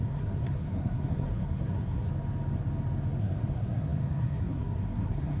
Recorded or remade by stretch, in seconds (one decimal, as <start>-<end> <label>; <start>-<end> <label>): 0.0-2.1 remade; 2.1-3.2 recorded; 3.2-5.4 remade